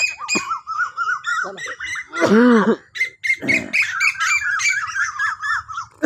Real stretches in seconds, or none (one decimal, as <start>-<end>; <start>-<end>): 0.0-6.1